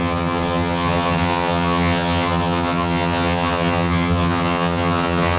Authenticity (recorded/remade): remade